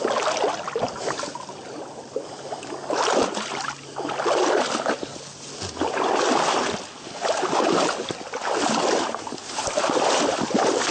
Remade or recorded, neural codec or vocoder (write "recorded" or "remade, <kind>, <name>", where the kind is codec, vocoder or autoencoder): recorded